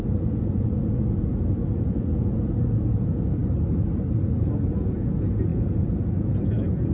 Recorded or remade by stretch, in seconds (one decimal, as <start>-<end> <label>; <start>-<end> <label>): 0.0-3.4 remade; 3.4-4.4 recorded; 4.4-6.9 remade